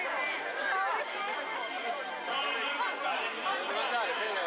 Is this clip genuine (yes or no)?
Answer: yes